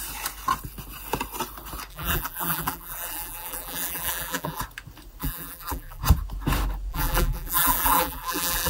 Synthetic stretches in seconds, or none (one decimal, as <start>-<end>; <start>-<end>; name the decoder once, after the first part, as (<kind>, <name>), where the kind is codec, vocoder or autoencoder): 1.9-4.6 (vocoder, BigVGAN v2); 5.2-6.0; 6.9-8.7